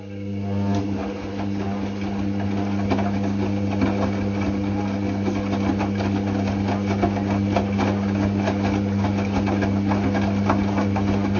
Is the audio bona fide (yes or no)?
yes